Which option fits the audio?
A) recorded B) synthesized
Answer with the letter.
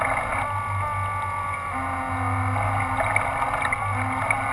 A